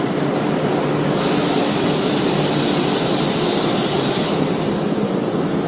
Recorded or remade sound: recorded